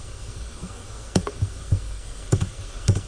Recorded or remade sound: remade